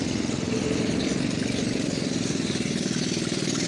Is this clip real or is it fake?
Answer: real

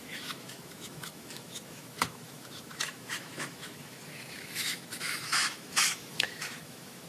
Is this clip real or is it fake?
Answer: fake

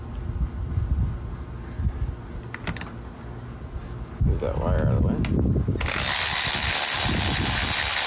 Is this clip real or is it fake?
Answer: real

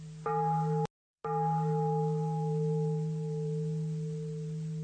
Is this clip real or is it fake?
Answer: real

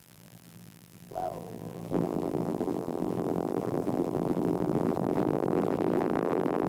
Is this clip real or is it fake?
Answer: fake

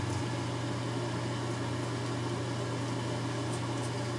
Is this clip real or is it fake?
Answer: real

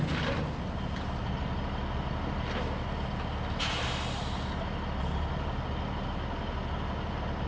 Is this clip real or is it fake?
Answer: real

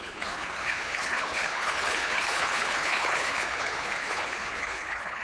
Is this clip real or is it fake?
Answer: fake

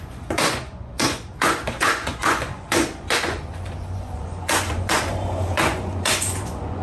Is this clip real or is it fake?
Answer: fake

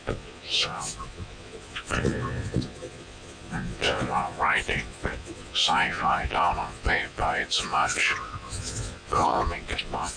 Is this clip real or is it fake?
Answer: fake